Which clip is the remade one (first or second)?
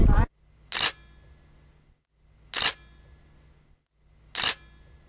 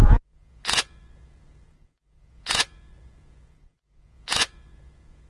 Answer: second